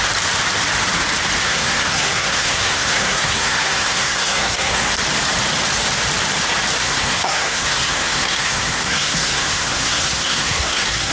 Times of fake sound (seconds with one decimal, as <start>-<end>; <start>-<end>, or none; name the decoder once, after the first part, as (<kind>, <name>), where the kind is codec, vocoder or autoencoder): 1.4-4.9 (codec, SNAC); 6.8-11.1